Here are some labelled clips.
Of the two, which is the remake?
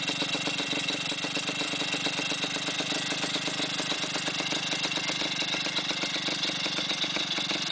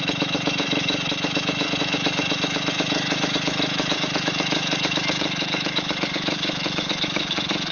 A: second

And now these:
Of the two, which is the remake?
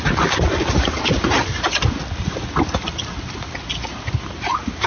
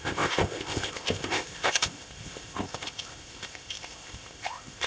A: second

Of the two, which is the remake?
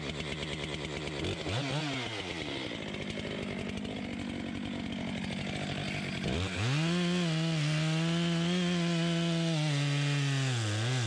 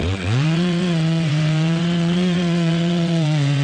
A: second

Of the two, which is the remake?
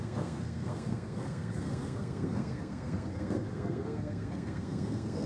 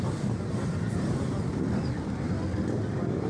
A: first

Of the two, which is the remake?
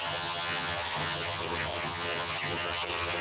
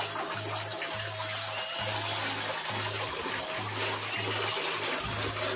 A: first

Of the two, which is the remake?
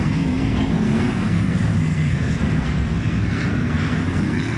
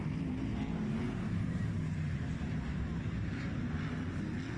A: first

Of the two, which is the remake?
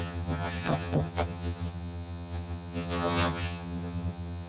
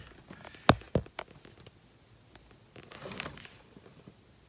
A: first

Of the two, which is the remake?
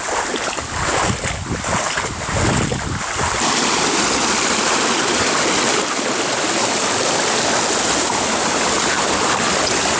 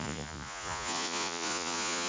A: second